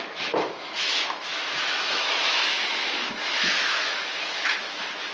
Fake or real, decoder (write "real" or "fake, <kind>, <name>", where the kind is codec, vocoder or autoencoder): fake, autoencoder, DAC-VAE